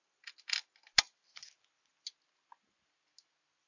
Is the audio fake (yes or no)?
no